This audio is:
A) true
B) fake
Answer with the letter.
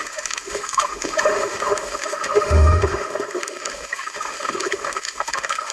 B